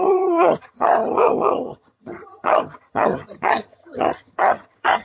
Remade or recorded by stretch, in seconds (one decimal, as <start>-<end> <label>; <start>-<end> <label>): 0.0-5.0 remade